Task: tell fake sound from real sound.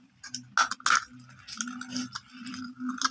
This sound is real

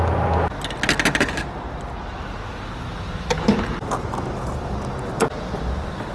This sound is real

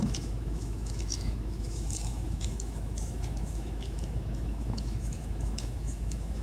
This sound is fake